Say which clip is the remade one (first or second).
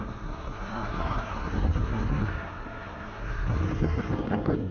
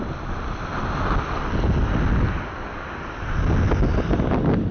first